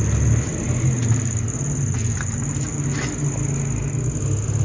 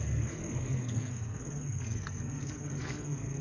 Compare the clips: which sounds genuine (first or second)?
first